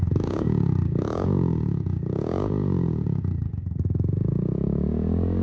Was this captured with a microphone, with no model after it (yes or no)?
no